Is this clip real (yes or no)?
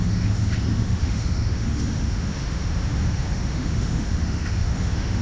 no